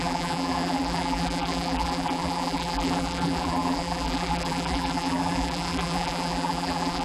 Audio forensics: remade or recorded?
remade